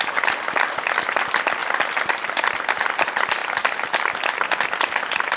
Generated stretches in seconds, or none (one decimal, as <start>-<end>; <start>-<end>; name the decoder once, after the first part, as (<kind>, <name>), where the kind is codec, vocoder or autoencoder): none